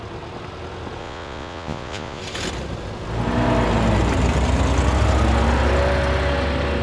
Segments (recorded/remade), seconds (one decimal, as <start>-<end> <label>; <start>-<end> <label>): 0.0-1.0 recorded; 1.0-2.2 remade; 2.2-6.8 recorded